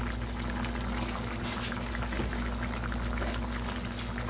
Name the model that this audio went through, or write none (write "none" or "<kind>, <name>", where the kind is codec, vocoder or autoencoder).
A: none